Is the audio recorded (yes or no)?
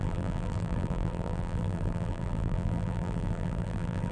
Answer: no